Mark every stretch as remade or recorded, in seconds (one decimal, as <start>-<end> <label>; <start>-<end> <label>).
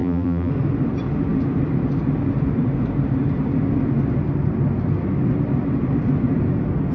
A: 0.0-0.5 remade; 0.5-6.9 recorded